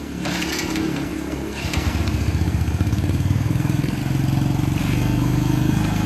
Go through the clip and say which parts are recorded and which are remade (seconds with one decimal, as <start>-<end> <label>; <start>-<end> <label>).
0.0-4.0 remade; 4.0-4.8 recorded; 4.8-6.1 remade